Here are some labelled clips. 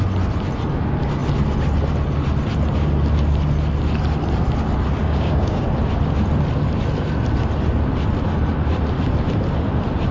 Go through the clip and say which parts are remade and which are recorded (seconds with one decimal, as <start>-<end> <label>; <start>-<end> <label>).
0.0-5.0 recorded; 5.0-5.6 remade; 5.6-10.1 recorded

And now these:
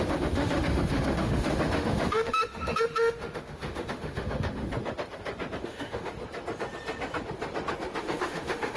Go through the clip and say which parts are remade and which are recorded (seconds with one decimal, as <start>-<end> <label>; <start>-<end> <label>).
0.0-4.7 remade; 4.7-5.6 recorded; 5.6-6.1 remade; 6.1-8.0 recorded; 8.0-8.8 remade

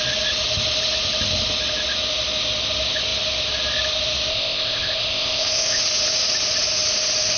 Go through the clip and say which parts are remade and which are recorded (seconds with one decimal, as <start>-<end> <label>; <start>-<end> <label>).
0.0-4.3 recorded; 4.3-5.8 remade; 5.8-7.4 recorded

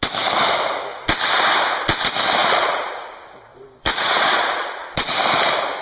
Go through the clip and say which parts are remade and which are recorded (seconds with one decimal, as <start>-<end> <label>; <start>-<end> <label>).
0.0-2.4 recorded; 2.4-3.0 remade; 3.0-3.5 recorded; 3.5-5.1 remade; 5.1-5.8 recorded

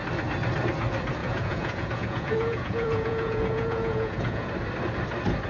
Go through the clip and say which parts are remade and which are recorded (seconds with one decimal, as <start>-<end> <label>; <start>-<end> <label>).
0.0-1.2 recorded; 1.2-4.5 remade; 4.5-5.5 recorded

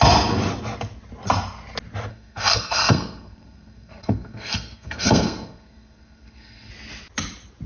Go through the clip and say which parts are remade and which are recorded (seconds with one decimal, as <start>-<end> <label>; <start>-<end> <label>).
0.0-2.1 recorded; 2.1-6.7 remade; 6.7-7.7 recorded

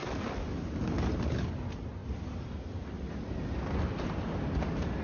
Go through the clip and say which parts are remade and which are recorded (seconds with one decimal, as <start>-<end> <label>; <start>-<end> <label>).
0.0-5.0 recorded